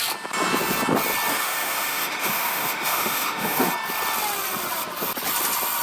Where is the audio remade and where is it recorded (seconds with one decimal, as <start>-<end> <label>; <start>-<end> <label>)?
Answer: 0.0-1.3 recorded; 1.3-3.7 remade; 3.7-5.8 recorded